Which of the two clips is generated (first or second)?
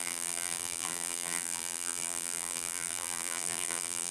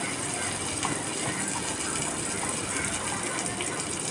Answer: first